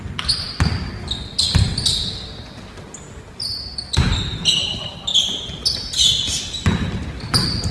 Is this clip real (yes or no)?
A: yes